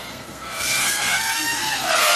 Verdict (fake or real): fake